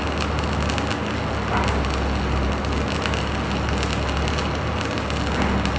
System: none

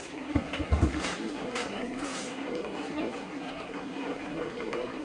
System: codec, SNAC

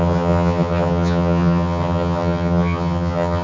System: vocoder, HiFi-GAN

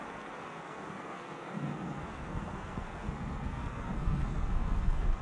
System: codec, SNAC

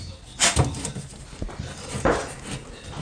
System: none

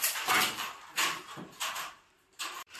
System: vocoder, BigVGAN v2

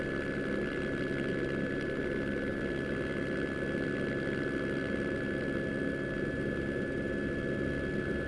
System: none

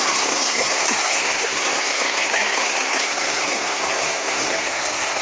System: codec, SNAC